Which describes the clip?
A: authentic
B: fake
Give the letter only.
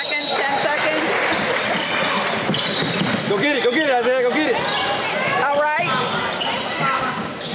A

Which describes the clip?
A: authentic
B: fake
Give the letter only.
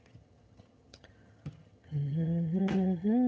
B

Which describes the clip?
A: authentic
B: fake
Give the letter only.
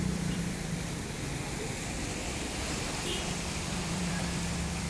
B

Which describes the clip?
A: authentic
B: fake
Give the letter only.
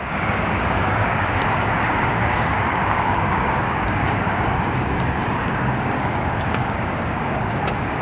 B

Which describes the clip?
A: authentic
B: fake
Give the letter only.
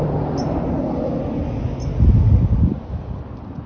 A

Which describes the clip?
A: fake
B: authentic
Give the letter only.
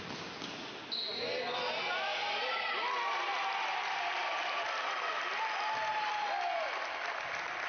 B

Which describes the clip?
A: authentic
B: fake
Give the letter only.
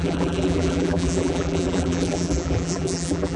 B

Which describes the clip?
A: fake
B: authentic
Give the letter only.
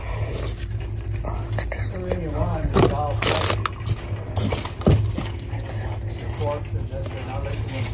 B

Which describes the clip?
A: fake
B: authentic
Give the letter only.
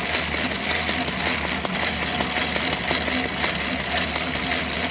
B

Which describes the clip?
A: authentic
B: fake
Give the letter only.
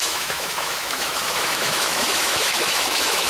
B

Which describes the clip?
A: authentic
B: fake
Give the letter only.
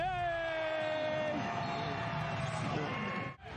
A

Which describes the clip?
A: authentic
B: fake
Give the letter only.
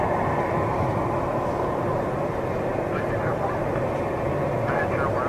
A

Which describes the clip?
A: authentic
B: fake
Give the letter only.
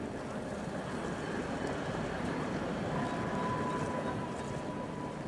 A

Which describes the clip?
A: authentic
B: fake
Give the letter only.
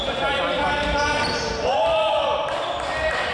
A